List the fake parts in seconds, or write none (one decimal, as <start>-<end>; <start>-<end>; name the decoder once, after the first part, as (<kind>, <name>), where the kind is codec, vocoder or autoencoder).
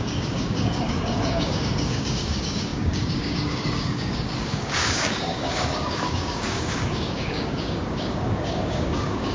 0.0-9.3 (codec, DAC)